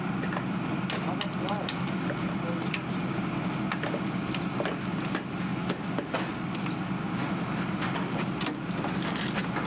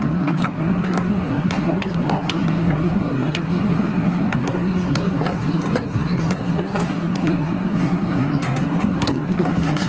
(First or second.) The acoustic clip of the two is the first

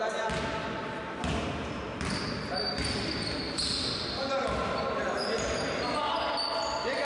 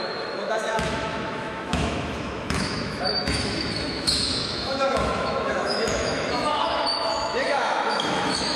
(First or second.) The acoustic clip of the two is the first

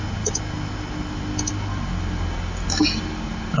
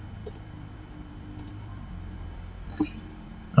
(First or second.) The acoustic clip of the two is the first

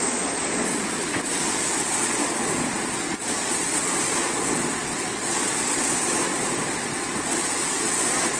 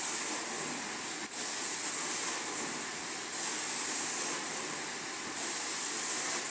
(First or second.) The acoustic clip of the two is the second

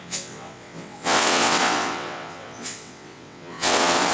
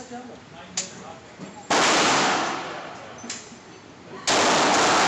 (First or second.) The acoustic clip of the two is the second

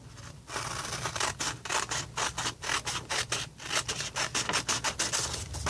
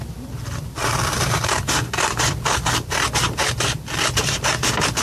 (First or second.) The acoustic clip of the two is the first